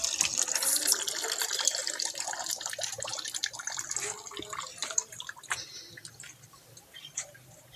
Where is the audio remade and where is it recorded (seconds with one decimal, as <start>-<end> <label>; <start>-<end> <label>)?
0.0-1.4 recorded; 1.4-1.8 remade; 1.8-2.4 recorded; 2.4-3.1 remade; 3.1-6.7 recorded; 6.7-7.8 remade